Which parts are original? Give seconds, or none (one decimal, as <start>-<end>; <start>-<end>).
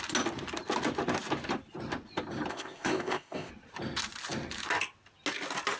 0.0-2.5; 3.5-5.8